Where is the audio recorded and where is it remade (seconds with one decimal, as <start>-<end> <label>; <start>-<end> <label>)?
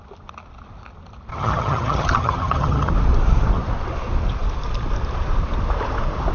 0.0-1.3 recorded; 1.3-2.9 remade; 2.9-6.3 recorded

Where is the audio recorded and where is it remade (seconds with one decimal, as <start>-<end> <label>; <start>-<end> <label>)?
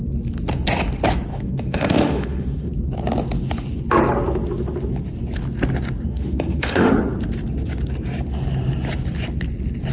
0.0-1.3 recorded; 1.3-2.7 remade; 2.7-6.1 recorded; 6.1-6.9 remade; 6.9-9.9 recorded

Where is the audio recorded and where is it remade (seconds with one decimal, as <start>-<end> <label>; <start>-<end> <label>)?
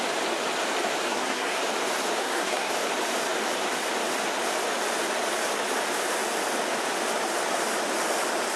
0.0-1.1 recorded; 1.1-1.6 remade; 1.6-2.2 recorded; 2.2-2.7 remade; 2.7-8.6 recorded